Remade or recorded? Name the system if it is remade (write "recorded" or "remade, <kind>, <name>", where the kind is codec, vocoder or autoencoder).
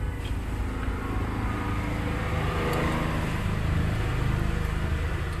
recorded